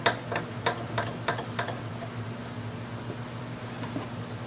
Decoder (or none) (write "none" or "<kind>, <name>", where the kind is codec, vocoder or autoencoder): none